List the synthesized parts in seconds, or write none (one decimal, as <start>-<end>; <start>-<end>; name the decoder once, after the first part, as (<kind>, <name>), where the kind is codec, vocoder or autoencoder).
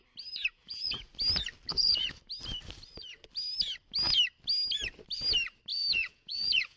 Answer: 0.5-1.1 (vocoder, Vocos); 1.7-2.2; 5.7-6.8